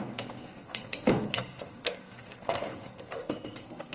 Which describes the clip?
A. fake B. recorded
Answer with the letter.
A